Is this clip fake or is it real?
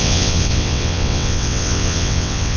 fake